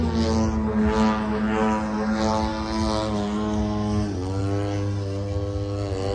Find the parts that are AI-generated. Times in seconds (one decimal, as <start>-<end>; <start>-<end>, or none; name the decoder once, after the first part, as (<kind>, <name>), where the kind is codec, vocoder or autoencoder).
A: none